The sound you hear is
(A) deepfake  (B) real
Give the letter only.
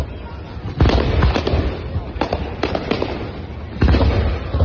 B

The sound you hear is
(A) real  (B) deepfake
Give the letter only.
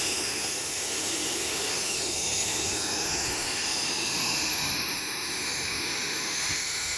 B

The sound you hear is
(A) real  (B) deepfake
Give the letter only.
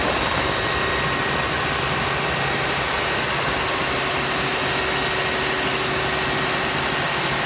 A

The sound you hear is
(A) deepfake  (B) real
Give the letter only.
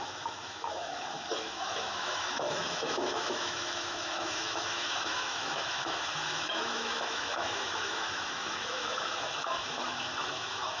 A